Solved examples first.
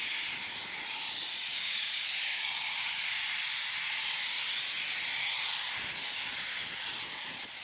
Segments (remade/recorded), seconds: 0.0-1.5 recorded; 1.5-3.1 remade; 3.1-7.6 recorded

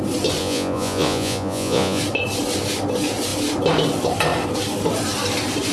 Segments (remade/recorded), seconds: 0.0-0.4 recorded; 0.4-2.0 remade; 2.0-5.7 recorded

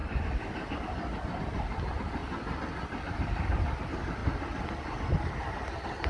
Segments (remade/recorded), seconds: 0.0-6.1 recorded

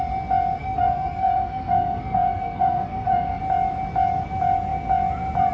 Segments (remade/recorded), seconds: 0.0-0.6 recorded; 0.6-3.4 remade; 3.4-5.5 recorded